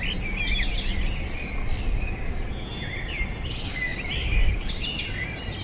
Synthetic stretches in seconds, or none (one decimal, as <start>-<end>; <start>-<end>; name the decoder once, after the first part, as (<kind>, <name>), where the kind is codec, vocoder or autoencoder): none